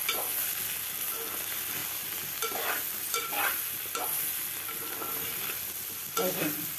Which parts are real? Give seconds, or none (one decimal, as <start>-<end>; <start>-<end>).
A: 0.0-6.8